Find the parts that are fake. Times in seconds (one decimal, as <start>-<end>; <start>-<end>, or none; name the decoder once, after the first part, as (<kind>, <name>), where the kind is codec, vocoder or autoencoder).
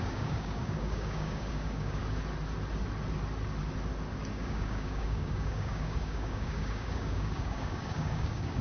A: 0.0-2.0 (codec, DAC); 4.3-8.6